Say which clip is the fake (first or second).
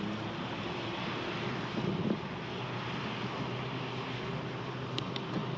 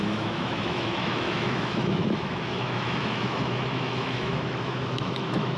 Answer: second